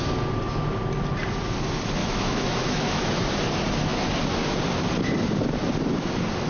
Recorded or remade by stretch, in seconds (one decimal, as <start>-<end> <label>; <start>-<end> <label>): 0.0-2.0 recorded; 2.0-3.1 remade; 3.1-6.5 recorded